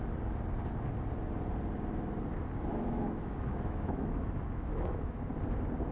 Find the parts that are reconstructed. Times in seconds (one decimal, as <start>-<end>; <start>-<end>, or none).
2.7-5.2